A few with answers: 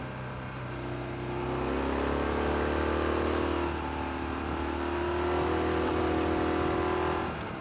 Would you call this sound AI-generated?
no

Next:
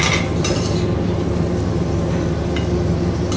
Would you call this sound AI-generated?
no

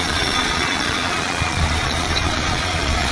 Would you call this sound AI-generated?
yes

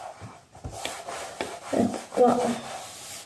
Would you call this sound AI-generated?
no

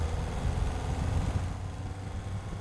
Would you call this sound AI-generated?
no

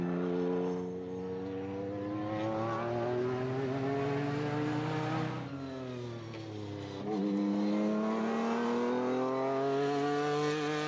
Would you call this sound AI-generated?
no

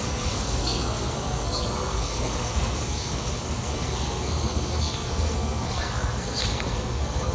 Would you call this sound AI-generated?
yes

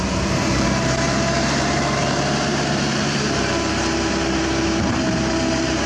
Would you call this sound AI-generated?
yes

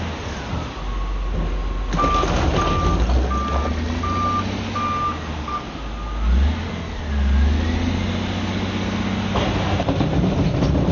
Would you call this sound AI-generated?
no